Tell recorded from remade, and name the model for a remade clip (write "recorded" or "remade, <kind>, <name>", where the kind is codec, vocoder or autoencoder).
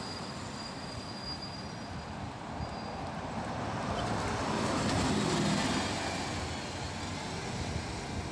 recorded